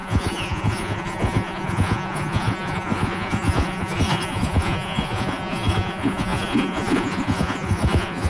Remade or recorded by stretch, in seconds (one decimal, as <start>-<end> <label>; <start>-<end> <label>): 0.0-8.3 remade